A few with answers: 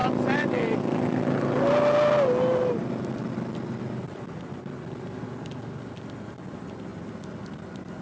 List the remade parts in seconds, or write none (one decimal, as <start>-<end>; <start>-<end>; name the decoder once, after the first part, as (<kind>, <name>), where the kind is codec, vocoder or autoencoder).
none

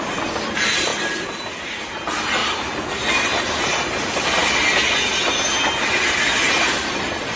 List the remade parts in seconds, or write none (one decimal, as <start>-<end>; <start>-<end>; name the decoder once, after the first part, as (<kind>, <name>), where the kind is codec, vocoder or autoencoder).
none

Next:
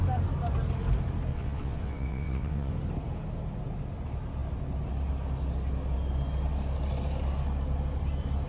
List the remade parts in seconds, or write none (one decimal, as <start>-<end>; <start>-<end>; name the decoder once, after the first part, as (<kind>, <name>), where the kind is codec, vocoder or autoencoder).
1.3-2.7 (vocoder, WaveNeXt)

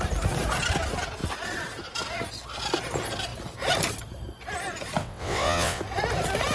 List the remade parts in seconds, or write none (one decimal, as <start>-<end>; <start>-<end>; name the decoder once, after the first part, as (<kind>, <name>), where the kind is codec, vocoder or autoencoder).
5.0-5.8 (vocoder, WaveNeXt)

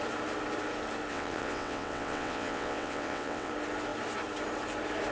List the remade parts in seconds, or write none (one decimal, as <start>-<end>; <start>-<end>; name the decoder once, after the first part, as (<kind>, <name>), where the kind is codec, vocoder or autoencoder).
1.1-3.5 (vocoder, WaveNeXt)